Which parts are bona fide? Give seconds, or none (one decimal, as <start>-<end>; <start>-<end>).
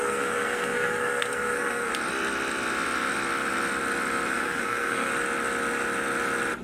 1.9-4.3; 5.1-6.6